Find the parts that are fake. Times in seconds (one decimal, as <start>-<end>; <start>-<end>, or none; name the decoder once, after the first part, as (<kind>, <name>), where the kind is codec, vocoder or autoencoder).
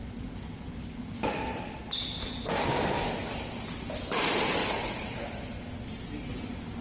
4.6-5.4 (vocoder, Vocos)